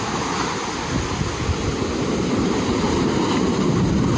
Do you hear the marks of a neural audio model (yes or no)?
no